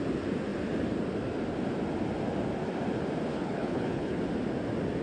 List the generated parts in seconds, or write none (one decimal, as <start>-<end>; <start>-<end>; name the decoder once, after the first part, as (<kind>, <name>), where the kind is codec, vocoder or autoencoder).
3.3-4.2 (codec, HILCodec)